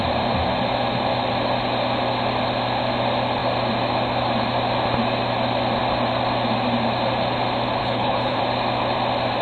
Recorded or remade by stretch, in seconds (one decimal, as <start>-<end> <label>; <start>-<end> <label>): 0.0-7.8 recorded; 7.8-8.4 remade; 8.4-9.4 recorded